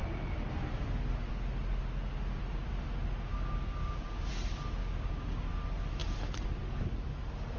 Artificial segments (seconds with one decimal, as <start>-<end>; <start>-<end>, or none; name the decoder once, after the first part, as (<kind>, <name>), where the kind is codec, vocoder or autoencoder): 3.3-4.3 (codec, DAC); 4.8-5.4